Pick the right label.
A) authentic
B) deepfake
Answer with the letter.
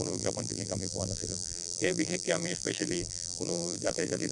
B